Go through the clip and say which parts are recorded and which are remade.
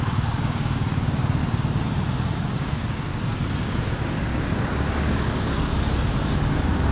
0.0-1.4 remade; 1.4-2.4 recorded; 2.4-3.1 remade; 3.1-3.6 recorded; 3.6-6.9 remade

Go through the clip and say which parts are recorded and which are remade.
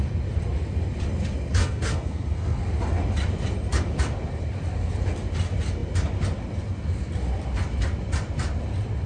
0.0-1.6 recorded; 1.6-2.6 remade; 2.6-9.1 recorded